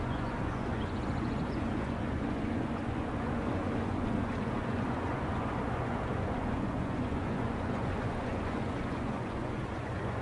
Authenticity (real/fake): fake